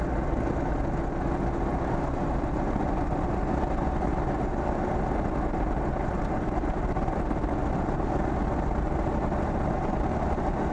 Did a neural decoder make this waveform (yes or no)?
no